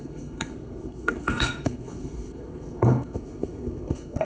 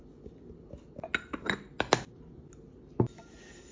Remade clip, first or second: first